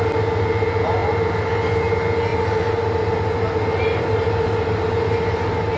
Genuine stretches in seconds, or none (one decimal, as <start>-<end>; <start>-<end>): 0.0-5.8